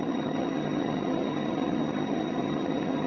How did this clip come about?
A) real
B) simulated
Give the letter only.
B